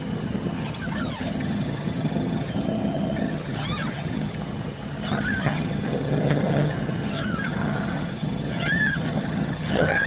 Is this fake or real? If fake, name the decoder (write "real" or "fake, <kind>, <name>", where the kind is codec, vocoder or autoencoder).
fake, vocoder, HiFi-GAN